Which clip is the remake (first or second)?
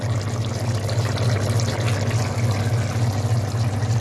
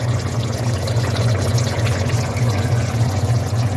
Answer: second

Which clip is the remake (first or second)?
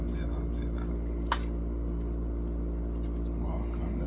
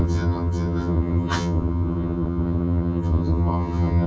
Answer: second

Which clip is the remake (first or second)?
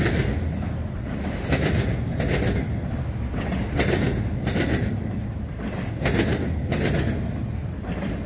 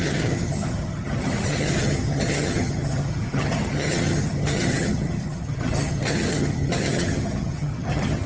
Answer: second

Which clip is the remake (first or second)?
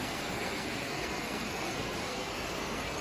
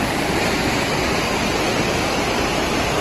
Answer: first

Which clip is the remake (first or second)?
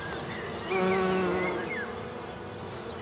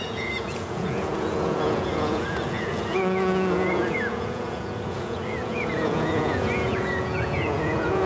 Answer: second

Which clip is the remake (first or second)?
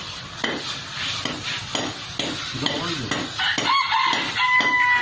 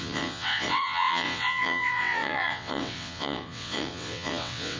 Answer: second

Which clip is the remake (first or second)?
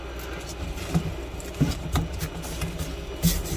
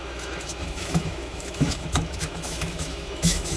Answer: second